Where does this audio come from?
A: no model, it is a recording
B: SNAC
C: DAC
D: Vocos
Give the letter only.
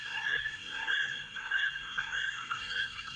B